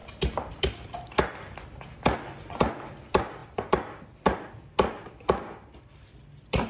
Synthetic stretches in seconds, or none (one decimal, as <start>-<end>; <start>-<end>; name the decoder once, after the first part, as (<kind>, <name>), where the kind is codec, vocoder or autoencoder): none